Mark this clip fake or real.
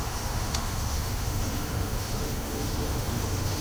fake